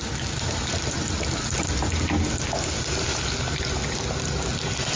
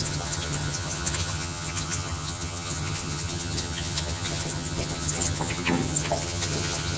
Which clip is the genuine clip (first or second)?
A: first